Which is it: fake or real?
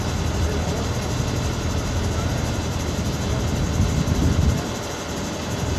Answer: real